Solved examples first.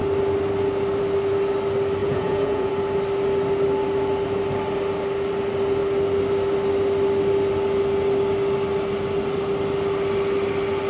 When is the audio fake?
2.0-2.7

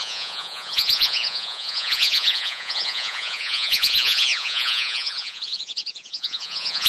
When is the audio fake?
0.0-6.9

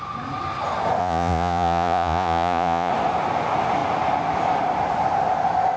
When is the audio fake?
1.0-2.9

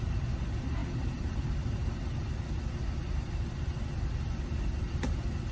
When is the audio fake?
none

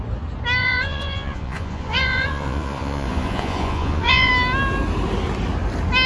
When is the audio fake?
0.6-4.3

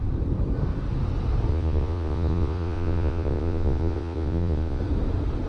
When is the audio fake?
1.5-4.8

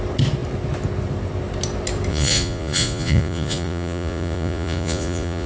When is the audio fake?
2.1-5.5

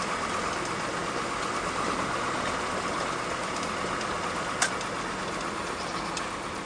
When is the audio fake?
none